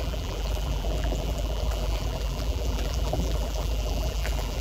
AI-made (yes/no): yes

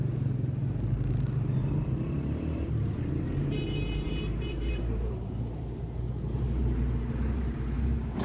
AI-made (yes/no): yes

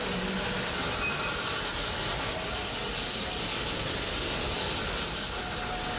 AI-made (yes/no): no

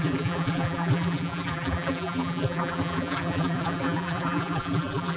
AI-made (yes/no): yes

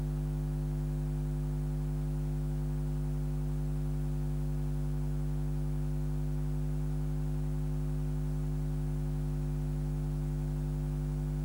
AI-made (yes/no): no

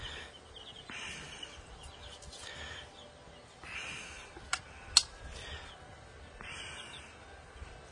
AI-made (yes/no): no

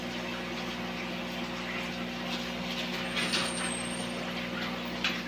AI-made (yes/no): no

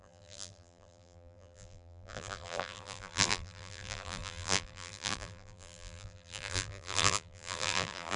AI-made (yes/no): yes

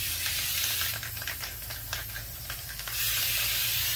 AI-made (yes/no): no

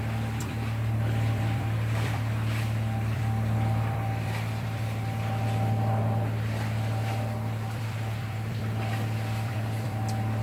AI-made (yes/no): yes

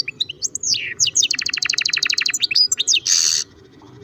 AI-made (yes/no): yes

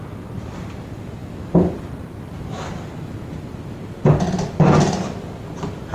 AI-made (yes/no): no